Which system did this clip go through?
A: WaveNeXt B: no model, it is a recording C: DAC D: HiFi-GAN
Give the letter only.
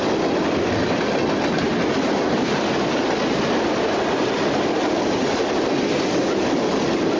B